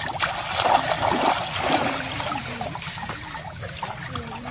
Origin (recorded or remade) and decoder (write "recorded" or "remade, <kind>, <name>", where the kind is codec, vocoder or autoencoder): recorded